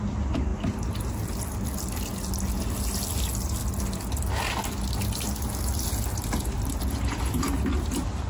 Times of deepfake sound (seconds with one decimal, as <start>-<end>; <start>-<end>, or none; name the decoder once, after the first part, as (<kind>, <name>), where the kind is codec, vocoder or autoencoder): none